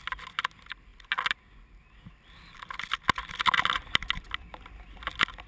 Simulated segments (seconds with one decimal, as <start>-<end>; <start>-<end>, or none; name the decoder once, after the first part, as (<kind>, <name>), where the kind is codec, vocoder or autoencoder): none